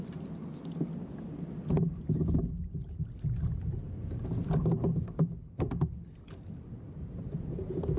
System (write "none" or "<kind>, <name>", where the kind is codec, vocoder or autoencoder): none